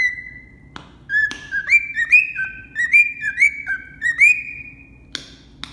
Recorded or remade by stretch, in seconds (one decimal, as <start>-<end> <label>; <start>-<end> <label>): 0.0-1.2 recorded; 1.2-2.4 remade; 2.4-3.1 recorded; 3.1-4.7 remade; 4.7-5.7 recorded